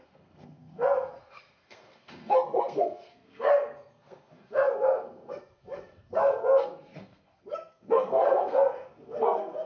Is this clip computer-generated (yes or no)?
yes